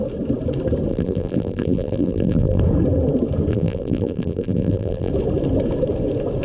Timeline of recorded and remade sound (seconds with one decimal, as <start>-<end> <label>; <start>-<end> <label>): 0.0-0.9 recorded; 0.9-2.6 remade; 2.6-3.5 recorded; 3.5-5.1 remade; 5.1-6.4 recorded

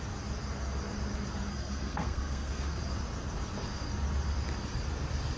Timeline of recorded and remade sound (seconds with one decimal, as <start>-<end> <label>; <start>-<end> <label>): 0.0-1.5 recorded; 1.5-2.8 remade; 2.8-5.4 recorded

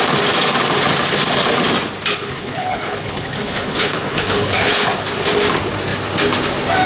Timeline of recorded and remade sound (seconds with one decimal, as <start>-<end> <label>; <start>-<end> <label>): 0.0-2.1 recorded; 2.1-4.9 remade; 4.9-6.9 recorded